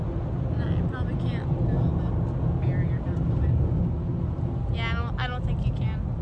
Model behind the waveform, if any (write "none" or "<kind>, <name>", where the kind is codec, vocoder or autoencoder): none